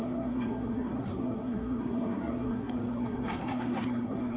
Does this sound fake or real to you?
fake